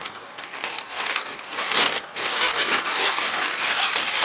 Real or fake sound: fake